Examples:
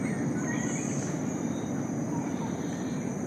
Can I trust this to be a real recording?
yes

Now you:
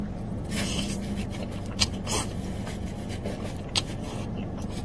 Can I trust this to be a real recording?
yes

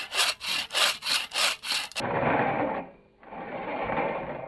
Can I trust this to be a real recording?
no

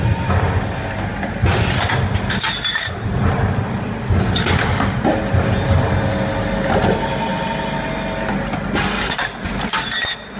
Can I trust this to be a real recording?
yes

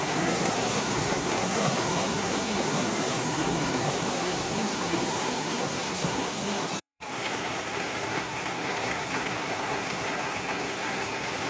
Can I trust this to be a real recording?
no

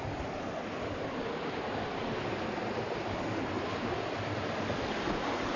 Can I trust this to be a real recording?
yes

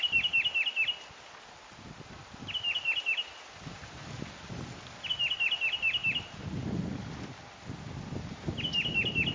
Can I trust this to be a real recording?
yes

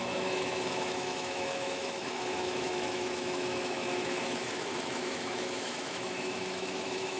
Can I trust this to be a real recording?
no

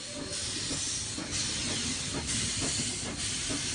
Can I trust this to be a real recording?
yes